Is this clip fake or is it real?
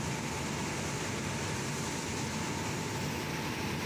real